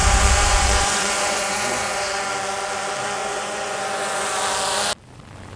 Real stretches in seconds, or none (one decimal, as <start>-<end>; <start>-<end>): 2.3-3.2; 4.3-5.6